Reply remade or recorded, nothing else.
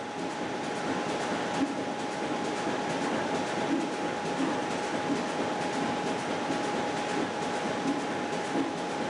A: recorded